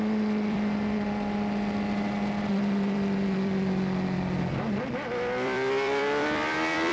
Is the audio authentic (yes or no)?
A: no